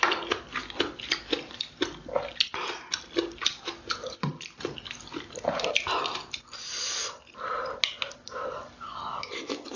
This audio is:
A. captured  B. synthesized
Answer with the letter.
A